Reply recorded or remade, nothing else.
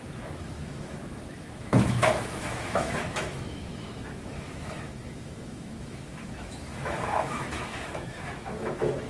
remade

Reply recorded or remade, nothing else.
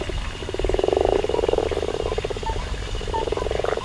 recorded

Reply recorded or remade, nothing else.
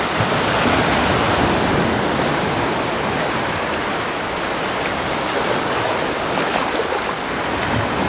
recorded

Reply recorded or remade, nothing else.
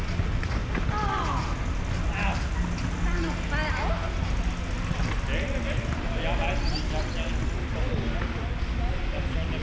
recorded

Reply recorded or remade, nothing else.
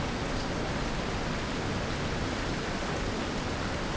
recorded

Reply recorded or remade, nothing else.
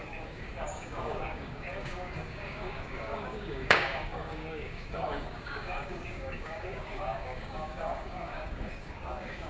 remade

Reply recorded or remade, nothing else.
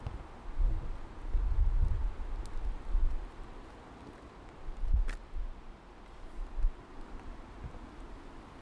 recorded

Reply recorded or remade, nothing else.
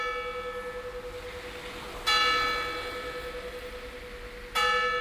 recorded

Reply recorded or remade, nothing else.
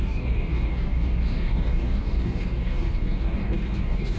remade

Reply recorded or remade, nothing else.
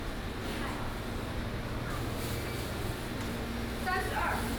recorded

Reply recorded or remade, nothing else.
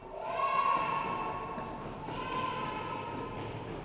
recorded